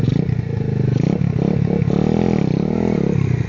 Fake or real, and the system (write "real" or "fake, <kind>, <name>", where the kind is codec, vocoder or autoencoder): real